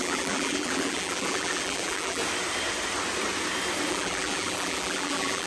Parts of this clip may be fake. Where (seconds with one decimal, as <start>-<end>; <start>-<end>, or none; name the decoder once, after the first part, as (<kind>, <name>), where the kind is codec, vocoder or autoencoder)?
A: 0.0-2.2 (vocoder, BigVGAN v2); 3.9-5.5